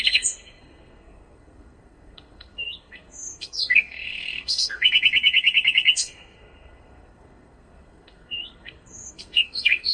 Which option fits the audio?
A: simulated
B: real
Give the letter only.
A